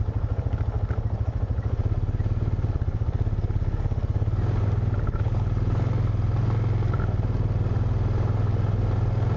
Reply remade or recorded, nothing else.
recorded